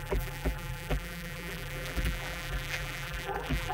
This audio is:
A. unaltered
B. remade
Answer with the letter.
B